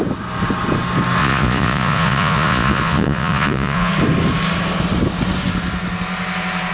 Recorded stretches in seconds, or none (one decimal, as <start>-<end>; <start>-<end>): 0.0-1.2; 3.9-6.7